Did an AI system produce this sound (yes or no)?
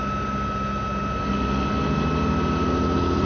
no